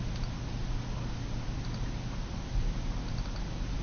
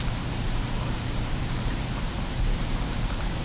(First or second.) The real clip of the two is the first